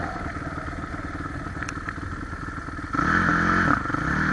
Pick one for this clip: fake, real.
real